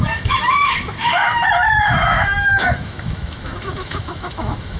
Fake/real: fake